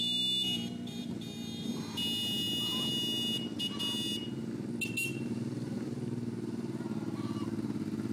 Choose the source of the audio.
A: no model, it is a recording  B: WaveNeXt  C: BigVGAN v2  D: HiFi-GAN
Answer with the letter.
A